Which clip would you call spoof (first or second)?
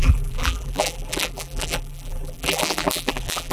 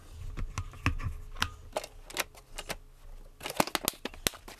first